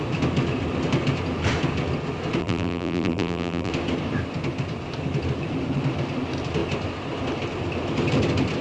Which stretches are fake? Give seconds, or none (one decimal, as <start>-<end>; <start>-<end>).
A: 2.4-3.7